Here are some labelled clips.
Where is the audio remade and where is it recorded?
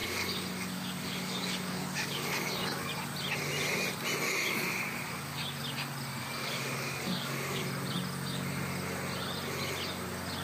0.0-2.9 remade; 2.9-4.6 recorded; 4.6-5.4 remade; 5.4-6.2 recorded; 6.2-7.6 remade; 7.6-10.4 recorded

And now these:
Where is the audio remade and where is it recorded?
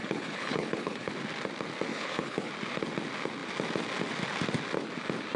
0.0-1.1 remade; 1.1-1.9 recorded; 1.9-2.5 remade; 2.5-5.4 recorded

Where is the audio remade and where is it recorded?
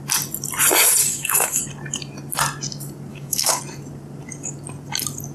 0.0-1.0 recorded; 1.0-1.6 remade; 1.6-3.1 recorded; 3.1-3.6 remade; 3.6-5.3 recorded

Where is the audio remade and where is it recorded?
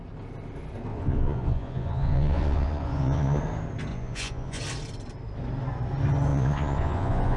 0.0-0.9 recorded; 0.9-3.4 remade; 3.4-3.9 recorded; 3.9-4.6 remade; 4.6-6.3 recorded; 6.3-7.4 remade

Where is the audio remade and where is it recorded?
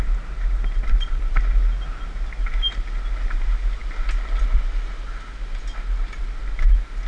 0.0-7.1 recorded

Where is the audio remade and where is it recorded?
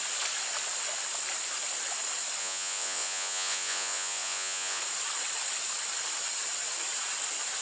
0.0-2.4 recorded; 2.4-4.8 remade; 4.8-7.6 recorded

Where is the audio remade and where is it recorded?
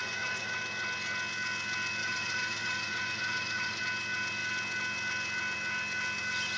0.0-0.6 remade; 0.6-2.0 recorded; 2.0-3.8 remade; 3.8-6.6 recorded